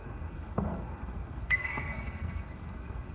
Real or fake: fake